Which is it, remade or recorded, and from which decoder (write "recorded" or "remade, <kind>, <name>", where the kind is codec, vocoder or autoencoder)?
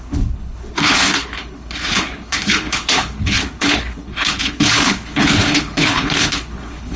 remade, codec, HILCodec